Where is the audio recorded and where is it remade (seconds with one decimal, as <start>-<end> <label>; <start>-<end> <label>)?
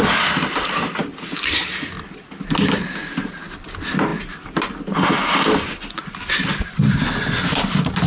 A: 0.0-8.1 recorded